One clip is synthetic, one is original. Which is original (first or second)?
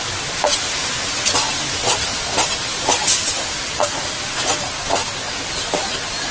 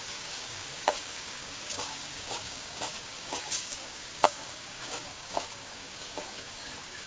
first